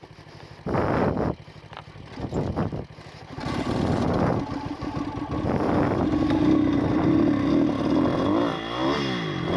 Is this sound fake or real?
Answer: real